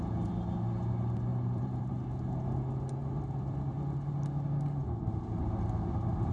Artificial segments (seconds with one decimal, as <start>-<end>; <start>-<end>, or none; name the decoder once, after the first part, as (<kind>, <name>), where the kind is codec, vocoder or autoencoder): 1.3-1.9 (vocoder, BigVGAN v2); 3.0-4.1; 4.8-6.3